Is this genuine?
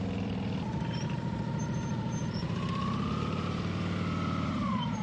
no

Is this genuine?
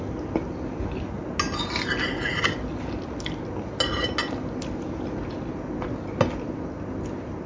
yes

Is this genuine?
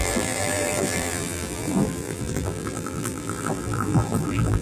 no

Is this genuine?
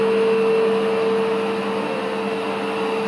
yes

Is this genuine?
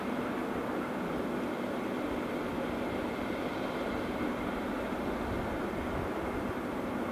yes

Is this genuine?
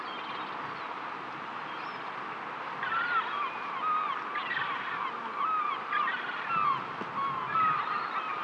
yes